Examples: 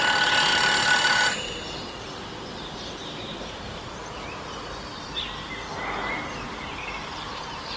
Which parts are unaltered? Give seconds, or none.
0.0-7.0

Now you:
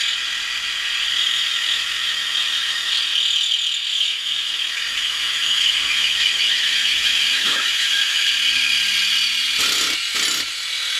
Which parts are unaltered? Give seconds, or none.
0.0-1.1; 2.9-3.9; 8.3-11.0